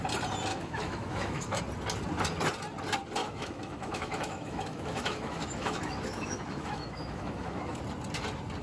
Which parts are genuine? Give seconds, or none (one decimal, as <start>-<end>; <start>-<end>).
0.0-0.5; 1.6-3.2; 7.8-8.6